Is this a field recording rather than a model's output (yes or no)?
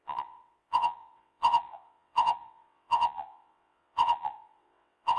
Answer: no